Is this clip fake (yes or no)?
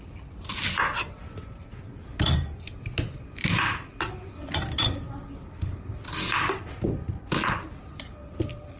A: no